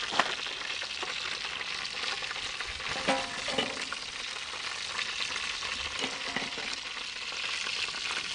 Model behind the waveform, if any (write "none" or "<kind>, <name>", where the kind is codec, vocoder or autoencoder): none